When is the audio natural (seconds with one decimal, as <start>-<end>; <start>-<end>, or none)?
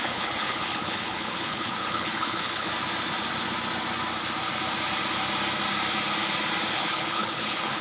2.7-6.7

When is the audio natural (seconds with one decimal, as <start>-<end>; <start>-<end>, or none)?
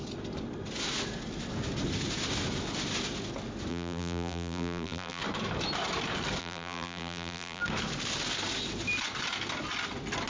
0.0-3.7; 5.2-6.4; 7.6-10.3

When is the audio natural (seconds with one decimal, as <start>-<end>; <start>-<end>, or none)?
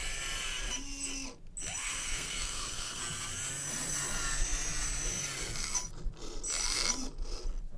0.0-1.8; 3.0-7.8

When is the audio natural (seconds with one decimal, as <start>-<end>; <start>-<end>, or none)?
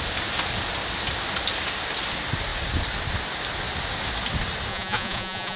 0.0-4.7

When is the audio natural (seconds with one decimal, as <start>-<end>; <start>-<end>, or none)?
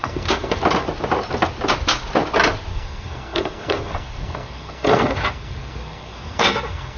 0.6-2.7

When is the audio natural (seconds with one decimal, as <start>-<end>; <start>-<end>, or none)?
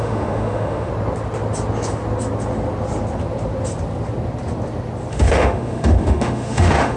0.9-5.1